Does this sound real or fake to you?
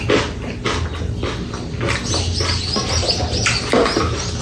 real